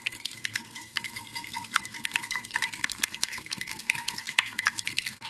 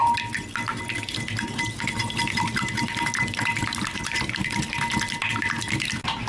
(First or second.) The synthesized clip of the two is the first